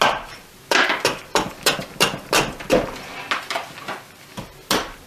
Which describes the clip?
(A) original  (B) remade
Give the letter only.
A